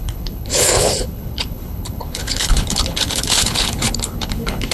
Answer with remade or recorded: remade